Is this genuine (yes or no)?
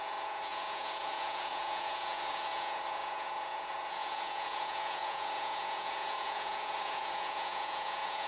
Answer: no